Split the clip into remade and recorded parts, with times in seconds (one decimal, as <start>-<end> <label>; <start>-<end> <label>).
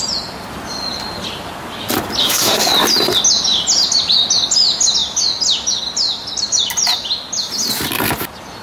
0.0-2.2 recorded; 2.2-2.7 remade; 2.7-8.6 recorded